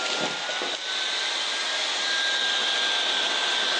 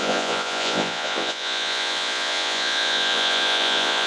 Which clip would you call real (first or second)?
first